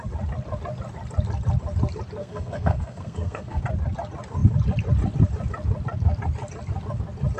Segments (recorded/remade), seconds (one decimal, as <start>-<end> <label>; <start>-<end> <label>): 0.0-2.2 recorded; 2.2-3.6 remade; 3.6-7.4 recorded